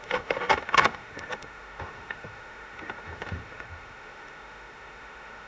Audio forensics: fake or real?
fake